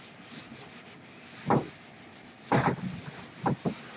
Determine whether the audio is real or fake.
real